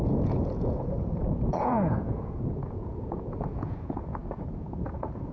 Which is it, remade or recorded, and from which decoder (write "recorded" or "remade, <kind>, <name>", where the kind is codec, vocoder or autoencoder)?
remade, vocoder, Vocos